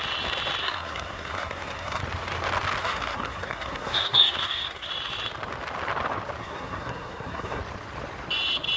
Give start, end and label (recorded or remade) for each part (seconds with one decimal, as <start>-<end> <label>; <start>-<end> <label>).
0.0-0.6 recorded; 0.6-2.0 remade; 2.0-2.8 recorded; 2.8-4.9 remade; 4.9-6.4 recorded; 6.4-7.6 remade; 7.6-8.8 recorded